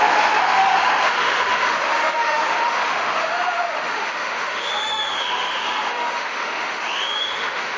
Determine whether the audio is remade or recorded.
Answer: remade